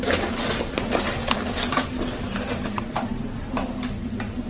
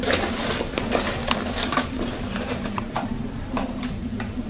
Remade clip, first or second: second